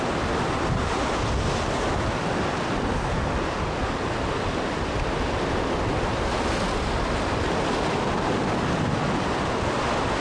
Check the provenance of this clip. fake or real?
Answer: real